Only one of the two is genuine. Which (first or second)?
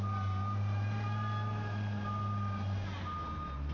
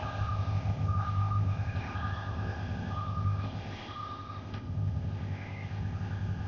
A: first